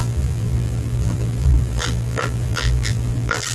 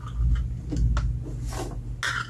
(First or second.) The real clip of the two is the second